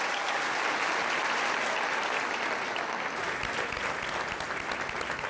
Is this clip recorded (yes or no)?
yes